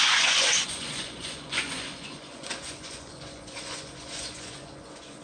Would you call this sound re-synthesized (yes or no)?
yes